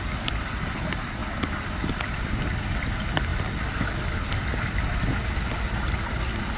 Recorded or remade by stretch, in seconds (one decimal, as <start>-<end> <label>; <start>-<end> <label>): 0.0-6.6 recorded